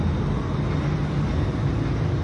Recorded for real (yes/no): yes